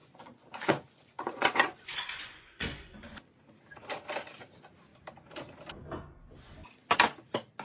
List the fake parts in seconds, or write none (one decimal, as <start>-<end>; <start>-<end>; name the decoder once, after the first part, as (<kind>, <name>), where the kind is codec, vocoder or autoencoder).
0.0-3.3 (vocoder, Vocos)